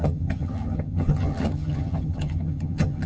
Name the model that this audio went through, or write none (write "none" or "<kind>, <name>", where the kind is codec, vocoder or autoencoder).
vocoder, HiFi-GAN